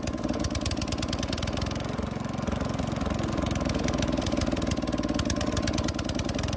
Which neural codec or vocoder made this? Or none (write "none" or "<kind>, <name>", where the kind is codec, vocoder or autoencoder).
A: none